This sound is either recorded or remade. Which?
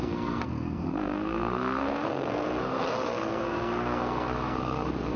remade